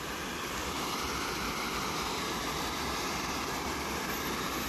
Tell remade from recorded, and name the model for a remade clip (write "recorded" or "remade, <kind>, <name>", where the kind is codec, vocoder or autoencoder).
remade, vocoder, BigVGAN v2